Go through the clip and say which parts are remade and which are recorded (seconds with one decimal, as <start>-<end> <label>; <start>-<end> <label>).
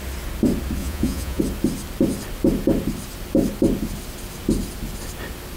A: 0.0-0.8 recorded; 0.8-1.4 remade; 1.4-5.6 recorded